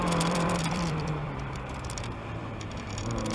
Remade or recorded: remade